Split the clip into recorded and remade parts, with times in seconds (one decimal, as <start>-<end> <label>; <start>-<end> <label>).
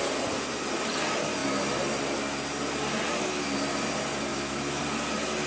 0.0-4.3 recorded; 4.3-4.8 remade; 4.8-5.5 recorded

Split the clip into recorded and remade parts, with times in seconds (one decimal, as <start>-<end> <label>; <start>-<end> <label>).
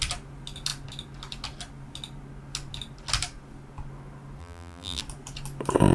0.0-4.4 recorded; 4.4-5.0 remade; 5.0-5.9 recorded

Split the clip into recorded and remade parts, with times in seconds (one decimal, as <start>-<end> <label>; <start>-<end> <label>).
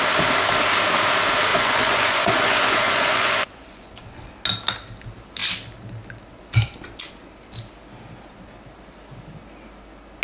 0.0-1.5 recorded; 1.5-4.3 remade; 4.3-10.2 recorded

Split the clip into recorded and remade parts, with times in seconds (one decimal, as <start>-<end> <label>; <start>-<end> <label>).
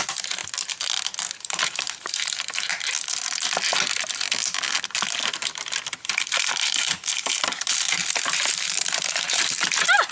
0.0-0.4 remade; 0.4-1.4 recorded; 1.4-2.7 remade; 2.7-6.0 recorded; 6.0-10.1 remade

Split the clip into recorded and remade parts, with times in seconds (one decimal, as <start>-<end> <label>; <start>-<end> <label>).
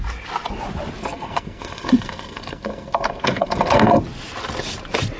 0.0-1.0 recorded; 1.0-4.0 remade; 4.0-5.2 recorded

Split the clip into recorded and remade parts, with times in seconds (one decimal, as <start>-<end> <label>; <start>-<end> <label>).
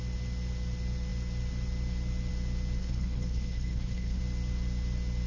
0.0-2.8 recorded; 2.8-4.2 remade; 4.2-5.3 recorded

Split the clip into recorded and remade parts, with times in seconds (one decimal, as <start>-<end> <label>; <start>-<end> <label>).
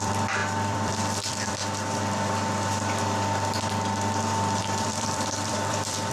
0.0-1.6 remade; 1.6-4.6 recorded; 4.6-6.1 remade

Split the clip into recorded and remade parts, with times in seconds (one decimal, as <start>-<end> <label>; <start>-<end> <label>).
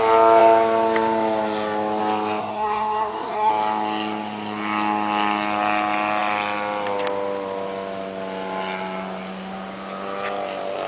0.0-2.4 recorded; 2.4-3.5 remade; 3.5-10.9 recorded